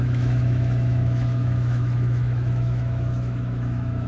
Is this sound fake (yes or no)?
yes